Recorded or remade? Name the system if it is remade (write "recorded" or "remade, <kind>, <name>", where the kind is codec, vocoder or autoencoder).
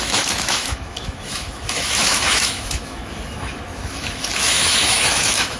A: remade, autoencoder, DAC-VAE